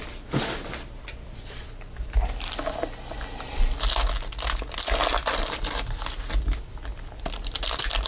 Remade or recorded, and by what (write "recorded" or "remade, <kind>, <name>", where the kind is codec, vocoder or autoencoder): recorded